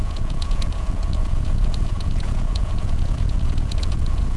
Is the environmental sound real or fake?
fake